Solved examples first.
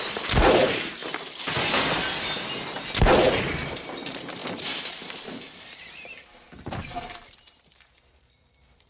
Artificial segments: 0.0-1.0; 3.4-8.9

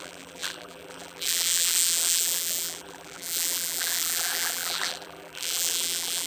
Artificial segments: 0.0-6.3

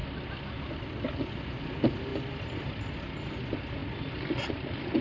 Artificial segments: 2.1-2.6

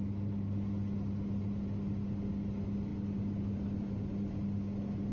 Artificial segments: none

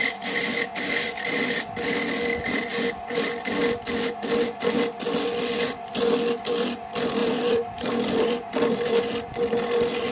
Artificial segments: 7.2-9.0

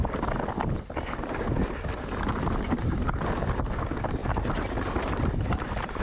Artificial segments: 4.2-6.0